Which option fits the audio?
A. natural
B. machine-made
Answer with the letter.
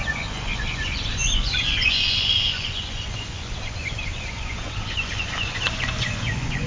B